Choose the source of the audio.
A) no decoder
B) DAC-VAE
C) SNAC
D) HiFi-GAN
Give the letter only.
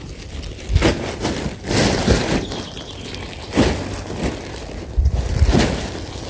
A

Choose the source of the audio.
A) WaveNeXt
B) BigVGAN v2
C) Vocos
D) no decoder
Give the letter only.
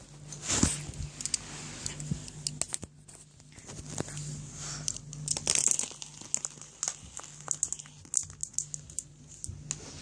D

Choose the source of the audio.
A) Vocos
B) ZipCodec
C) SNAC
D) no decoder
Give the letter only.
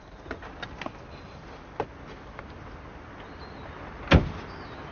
D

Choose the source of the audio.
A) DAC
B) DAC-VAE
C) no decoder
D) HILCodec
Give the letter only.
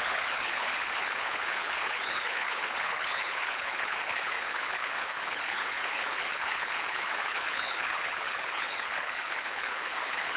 D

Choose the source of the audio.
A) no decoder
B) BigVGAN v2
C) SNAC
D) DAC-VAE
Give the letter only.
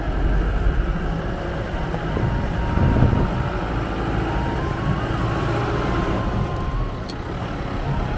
A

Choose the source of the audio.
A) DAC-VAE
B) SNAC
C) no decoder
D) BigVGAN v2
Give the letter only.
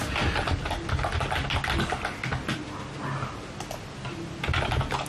C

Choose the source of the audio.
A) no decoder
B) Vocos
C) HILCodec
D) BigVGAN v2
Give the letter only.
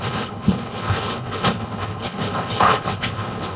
C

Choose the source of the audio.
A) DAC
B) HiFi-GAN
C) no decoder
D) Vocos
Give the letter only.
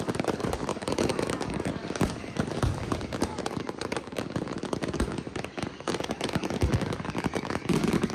A